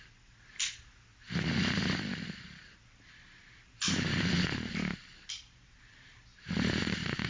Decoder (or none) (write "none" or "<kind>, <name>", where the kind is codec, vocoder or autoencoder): vocoder, BigVGAN v2